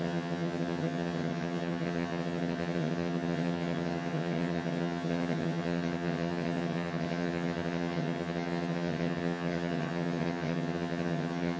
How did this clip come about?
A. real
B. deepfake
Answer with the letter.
B